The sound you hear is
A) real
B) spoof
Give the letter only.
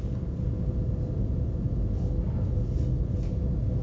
A